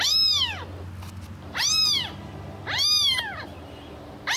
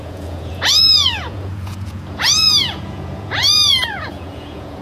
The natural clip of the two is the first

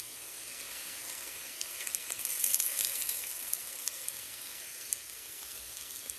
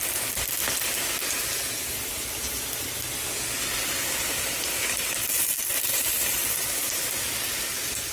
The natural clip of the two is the second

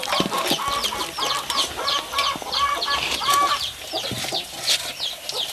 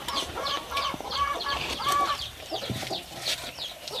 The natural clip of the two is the first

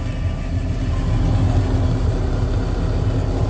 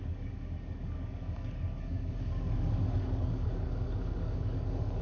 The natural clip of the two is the first